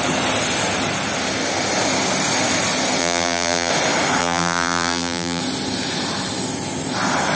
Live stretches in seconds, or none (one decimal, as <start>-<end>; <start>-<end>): 0.0-3.0; 3.7-4.2; 5.4-7.4